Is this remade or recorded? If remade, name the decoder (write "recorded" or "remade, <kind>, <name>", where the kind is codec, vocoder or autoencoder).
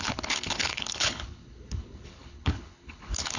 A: remade, codec, HILCodec